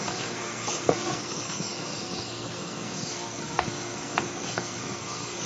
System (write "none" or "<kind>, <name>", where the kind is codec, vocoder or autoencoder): codec, SNAC